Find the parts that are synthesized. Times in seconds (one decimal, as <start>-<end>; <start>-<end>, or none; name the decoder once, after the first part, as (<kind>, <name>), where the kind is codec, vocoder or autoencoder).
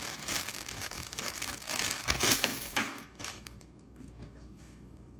0.0-5.2 (codec, DAC)